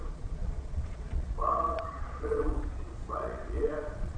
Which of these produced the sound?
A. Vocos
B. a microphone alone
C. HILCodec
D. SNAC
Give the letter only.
A